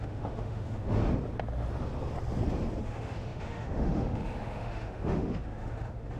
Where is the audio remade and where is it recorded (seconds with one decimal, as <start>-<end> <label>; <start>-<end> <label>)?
0.0-1.0 remade; 1.0-2.8 recorded; 2.8-6.2 remade